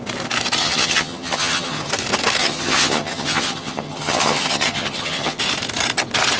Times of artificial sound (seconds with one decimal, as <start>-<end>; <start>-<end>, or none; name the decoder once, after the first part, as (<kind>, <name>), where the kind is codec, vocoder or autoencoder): 0.6-1.9 (vocoder, HiFi-GAN); 2.4-5.4

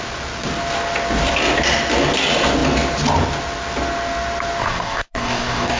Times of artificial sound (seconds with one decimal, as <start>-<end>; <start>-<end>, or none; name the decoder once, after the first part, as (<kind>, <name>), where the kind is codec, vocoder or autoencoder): 4.6-5.8 (codec, DAC)

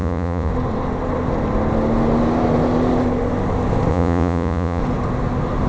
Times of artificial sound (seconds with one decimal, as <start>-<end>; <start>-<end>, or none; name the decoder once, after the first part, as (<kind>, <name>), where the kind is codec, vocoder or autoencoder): 0.0-0.5 (vocoder, Vocos); 3.9-4.8

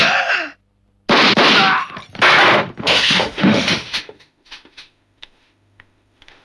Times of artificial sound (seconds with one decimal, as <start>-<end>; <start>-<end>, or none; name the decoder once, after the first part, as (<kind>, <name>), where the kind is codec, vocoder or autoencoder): 2.8-6.4 (autoencoder, DAC-VAE)

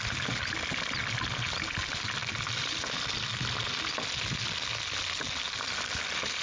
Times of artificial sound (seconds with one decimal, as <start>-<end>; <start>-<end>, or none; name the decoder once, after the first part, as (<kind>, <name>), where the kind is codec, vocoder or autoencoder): none